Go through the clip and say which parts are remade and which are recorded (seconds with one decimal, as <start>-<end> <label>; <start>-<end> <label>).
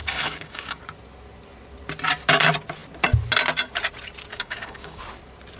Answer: 0.0-0.8 remade; 0.8-4.3 recorded; 4.3-5.0 remade; 5.0-5.6 recorded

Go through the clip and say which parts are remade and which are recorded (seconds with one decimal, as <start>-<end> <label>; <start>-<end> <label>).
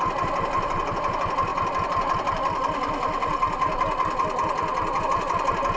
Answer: 0.0-5.8 recorded